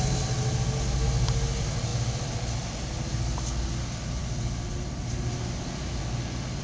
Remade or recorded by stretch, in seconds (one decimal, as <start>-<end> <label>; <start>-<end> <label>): 0.0-6.6 recorded